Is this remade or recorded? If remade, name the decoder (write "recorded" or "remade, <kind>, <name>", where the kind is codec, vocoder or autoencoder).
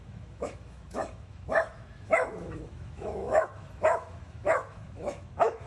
remade, autoencoder, DAC-VAE